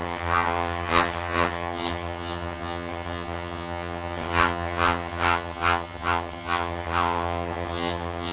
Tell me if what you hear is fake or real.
fake